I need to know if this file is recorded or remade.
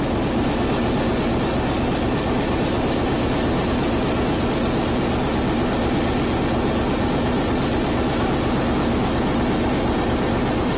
recorded